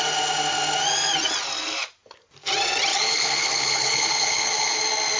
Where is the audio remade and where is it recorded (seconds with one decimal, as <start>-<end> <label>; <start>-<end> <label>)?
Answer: 0.0-2.9 recorded; 2.9-4.8 remade; 4.8-5.2 recorded